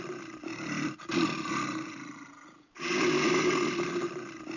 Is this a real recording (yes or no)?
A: no